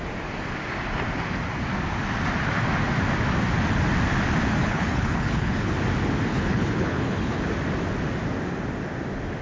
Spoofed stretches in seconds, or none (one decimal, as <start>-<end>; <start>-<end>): 4.6-5.7; 6.3-7.4